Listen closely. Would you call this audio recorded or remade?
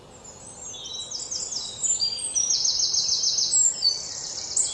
recorded